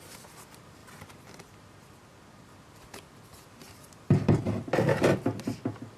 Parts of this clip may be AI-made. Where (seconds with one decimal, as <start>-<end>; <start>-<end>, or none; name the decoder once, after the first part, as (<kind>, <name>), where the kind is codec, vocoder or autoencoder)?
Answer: 0.8-4.4 (vocoder, BigVGAN v2)